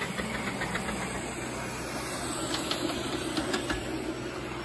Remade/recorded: recorded